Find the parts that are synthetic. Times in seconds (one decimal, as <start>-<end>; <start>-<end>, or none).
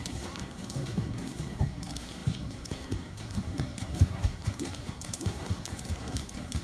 0.0-6.6